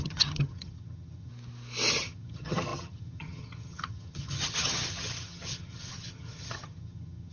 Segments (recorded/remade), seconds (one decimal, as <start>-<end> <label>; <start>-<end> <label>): 0.0-1.3 remade; 1.3-1.9 recorded; 1.9-7.3 remade